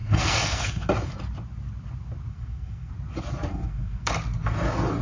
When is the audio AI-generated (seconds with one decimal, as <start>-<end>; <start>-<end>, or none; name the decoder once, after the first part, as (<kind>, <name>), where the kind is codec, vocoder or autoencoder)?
0.0-0.9 (codec, SNAC); 2.3-2.9; 3.5-4.1